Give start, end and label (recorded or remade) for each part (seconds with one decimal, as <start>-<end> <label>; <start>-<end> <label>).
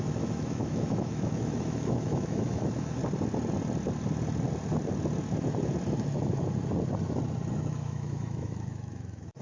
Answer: 0.0-3.0 remade; 3.0-7.5 recorded; 7.5-9.4 remade